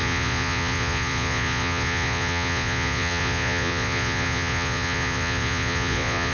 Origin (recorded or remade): remade